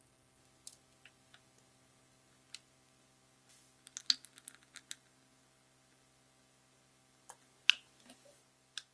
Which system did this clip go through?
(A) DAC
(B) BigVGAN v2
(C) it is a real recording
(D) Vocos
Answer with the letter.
C